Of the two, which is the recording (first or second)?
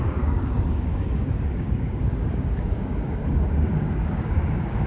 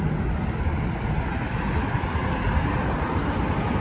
second